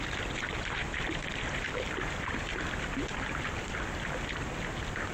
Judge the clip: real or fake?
real